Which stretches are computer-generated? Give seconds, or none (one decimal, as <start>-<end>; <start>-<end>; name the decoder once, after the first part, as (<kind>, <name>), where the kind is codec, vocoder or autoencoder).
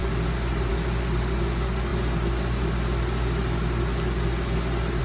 none